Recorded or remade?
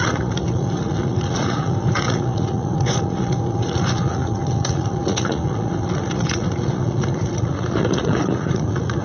remade